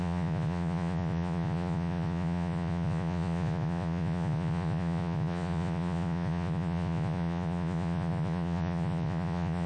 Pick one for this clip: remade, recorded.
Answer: remade